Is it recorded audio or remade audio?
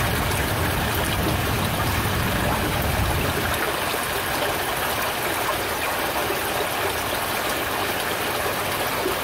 recorded